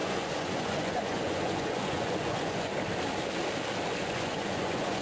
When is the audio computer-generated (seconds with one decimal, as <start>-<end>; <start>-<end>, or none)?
0.0-2.7; 4.0-5.0